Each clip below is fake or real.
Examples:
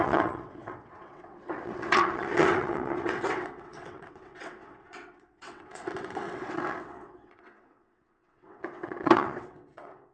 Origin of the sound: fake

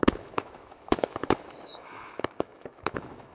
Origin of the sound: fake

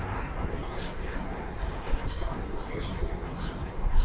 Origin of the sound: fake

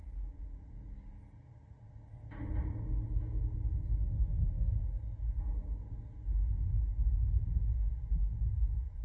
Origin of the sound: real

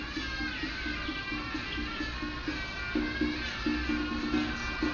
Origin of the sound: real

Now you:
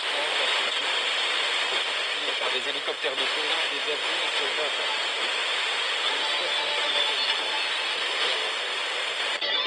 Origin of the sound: real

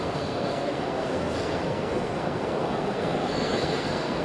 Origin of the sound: fake